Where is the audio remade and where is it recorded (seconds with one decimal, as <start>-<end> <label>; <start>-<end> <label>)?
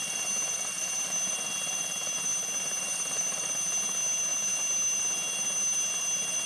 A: 0.0-6.5 recorded